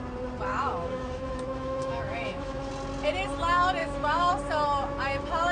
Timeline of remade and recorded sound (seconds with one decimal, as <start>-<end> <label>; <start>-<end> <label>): 0.0-0.5 recorded; 0.5-2.7 remade; 2.7-3.8 recorded; 3.8-4.3 remade; 4.3-5.5 recorded